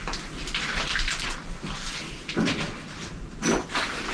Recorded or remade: recorded